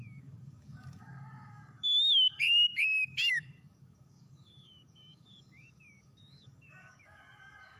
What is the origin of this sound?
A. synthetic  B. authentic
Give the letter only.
A